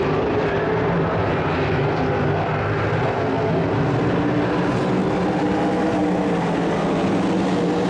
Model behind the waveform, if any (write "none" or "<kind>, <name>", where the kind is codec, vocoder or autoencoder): none